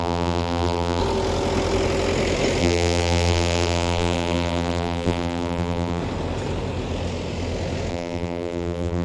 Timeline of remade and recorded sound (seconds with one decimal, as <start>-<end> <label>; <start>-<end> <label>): 0.0-1.0 remade; 1.0-2.6 recorded; 2.6-6.0 remade; 6.0-7.9 recorded; 7.9-9.0 remade